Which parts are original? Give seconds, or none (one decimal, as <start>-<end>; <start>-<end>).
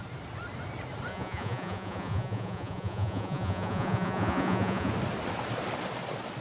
0.0-1.1; 4.9-6.4